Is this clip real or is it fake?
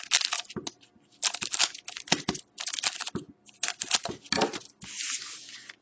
real